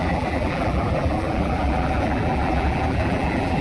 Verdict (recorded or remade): remade